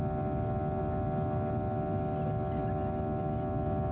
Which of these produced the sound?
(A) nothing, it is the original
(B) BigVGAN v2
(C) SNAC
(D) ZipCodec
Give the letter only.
A